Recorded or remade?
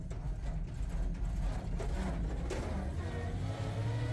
recorded